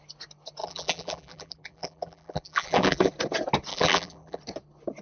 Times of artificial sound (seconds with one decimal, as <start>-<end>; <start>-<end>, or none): 0.6-3.1; 3.7-4.4